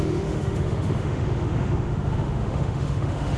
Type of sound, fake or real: fake